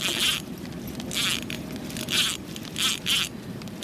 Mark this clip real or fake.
real